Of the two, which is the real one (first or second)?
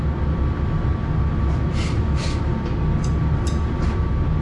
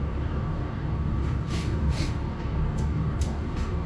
first